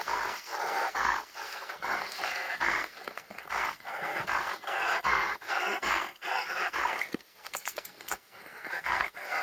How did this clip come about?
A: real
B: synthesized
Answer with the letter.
B